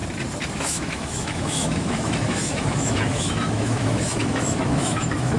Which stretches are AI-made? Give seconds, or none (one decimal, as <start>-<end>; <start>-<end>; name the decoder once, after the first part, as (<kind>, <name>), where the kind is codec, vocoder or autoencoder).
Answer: 0.5-5.4 (autoencoder, DAC-VAE)